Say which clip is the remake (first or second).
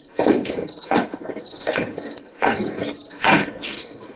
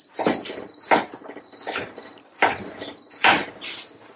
first